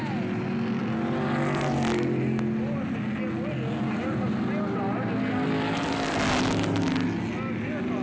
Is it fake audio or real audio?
real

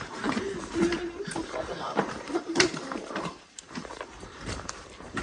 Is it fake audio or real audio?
fake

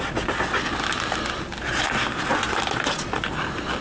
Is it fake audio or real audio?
real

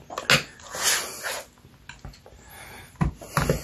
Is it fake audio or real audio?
real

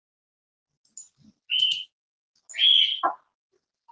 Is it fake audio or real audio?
real